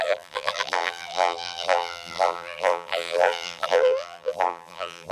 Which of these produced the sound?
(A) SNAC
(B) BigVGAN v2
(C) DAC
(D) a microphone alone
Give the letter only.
B